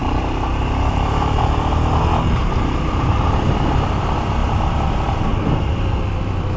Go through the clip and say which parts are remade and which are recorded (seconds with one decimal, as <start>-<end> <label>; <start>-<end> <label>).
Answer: 0.0-1.4 remade; 1.4-2.4 recorded; 2.4-4.0 remade; 4.0-6.6 recorded